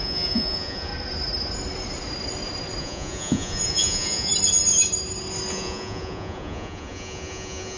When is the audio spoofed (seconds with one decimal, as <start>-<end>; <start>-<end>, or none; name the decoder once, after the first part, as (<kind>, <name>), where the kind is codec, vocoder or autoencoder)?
0.0-0.9 (vocoder, Vocos); 2.8-4.3; 5.5-7.8